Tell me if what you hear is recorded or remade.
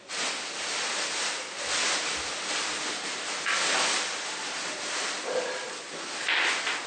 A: recorded